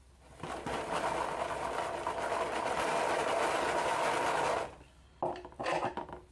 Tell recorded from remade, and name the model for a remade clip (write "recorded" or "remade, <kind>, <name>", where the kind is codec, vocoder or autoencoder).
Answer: recorded